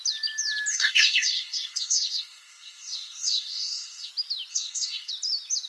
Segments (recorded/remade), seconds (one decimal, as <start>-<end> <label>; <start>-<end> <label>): 0.0-0.7 recorded; 0.7-4.1 remade; 4.1-4.5 recorded; 4.5-5.1 remade; 5.1-5.7 recorded